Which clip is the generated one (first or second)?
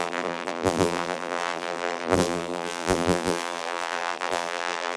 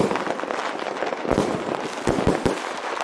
first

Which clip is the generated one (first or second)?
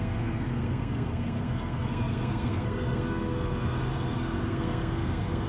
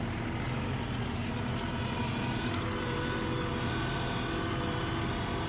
first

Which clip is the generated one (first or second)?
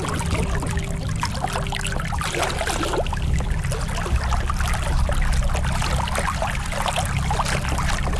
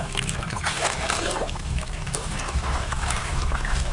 second